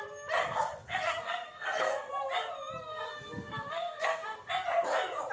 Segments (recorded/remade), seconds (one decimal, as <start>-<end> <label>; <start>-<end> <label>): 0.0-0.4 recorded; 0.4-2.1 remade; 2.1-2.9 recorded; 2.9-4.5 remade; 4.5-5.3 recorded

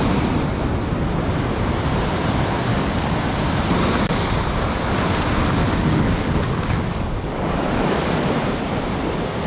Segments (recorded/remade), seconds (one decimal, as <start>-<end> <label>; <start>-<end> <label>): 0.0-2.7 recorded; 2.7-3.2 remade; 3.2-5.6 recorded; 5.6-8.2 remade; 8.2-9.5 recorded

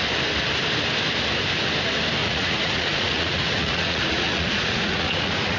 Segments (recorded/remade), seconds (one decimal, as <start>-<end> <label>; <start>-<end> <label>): 0.0-2.2 recorded; 2.2-5.6 remade

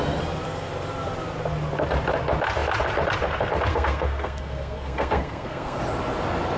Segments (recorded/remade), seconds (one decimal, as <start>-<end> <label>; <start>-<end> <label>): 0.0-3.7 recorded; 3.7-5.8 remade; 5.8-6.6 recorded

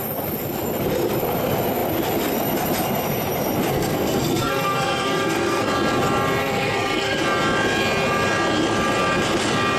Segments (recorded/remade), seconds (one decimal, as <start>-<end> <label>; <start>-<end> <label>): 0.0-3.7 recorded; 3.7-5.7 remade; 5.7-6.4 recorded; 6.4-7.2 remade; 7.2-9.8 recorded

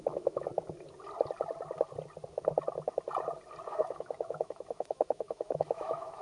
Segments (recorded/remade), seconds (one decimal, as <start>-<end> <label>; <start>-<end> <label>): 0.0-0.5 remade; 0.5-3.7 recorded; 3.7-6.2 remade